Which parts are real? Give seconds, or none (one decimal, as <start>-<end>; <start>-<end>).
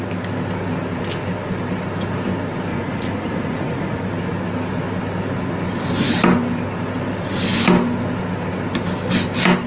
0.0-2.7; 4.0-9.7